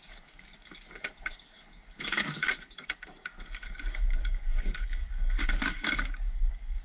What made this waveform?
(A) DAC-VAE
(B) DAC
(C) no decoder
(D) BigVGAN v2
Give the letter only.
B